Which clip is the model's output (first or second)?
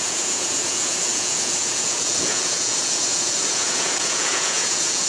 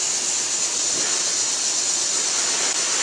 first